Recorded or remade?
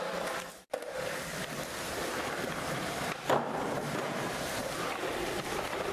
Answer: remade